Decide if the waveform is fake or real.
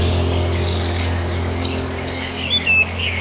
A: fake